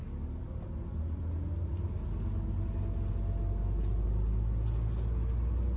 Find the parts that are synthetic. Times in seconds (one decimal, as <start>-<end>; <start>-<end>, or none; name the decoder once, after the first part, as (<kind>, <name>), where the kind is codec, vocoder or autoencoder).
none